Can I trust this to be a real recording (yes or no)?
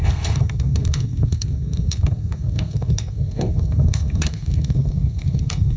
no